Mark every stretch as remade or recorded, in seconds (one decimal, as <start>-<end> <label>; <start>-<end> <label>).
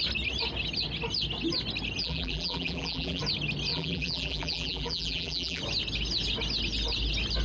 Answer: 0.0-2.0 recorded; 2.0-3.2 remade; 3.2-3.7 recorded; 3.7-5.6 remade; 5.6-7.4 recorded